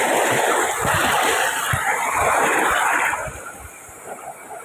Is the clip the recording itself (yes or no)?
yes